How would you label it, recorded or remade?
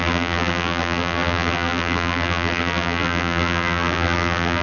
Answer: remade